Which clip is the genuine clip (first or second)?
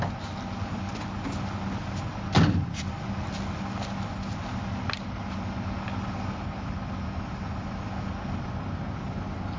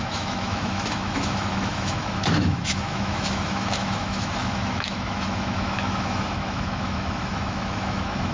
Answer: first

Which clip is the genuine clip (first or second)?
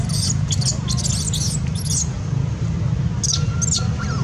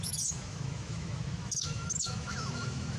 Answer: first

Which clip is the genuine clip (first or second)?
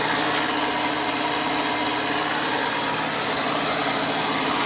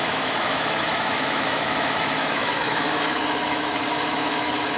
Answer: first